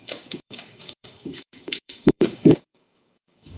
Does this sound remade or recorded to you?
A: remade